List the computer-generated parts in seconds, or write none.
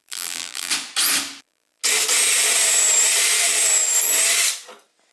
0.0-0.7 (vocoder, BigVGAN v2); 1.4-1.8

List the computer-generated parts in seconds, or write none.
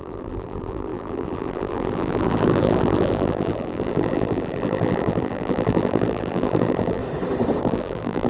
0.0-7.0 (vocoder, BigVGAN v2); 7.6-8.3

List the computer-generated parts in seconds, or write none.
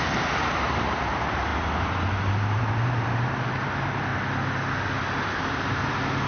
0.0-4.1 (vocoder, BigVGAN v2); 5.3-6.3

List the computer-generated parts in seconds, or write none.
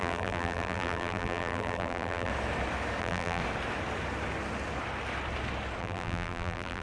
0.0-2.3 (vocoder, BigVGAN v2); 3.0-3.4; 5.8-6.8